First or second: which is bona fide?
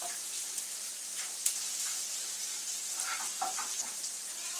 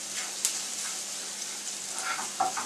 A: second